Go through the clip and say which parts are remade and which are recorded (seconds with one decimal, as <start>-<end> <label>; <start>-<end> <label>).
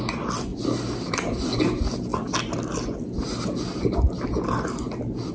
0.0-0.5 recorded; 0.5-1.4 remade; 1.4-5.3 recorded